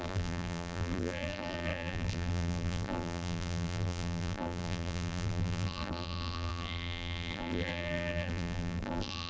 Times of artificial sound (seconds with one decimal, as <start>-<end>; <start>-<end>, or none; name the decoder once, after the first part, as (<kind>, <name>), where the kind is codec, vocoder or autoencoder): 0.0-9.3 (vocoder, BigVGAN v2)